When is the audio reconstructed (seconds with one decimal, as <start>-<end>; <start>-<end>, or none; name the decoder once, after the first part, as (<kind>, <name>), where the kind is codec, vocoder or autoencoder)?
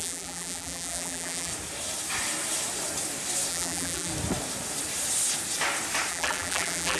0.0-1.5 (vocoder, BigVGAN v2); 3.5-4.1; 6.1-7.0